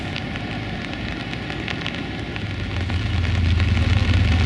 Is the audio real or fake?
real